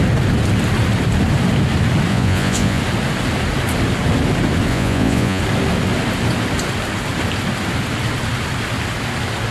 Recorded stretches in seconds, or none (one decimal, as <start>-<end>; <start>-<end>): 0.0-2.1; 2.8-4.7; 5.4-9.5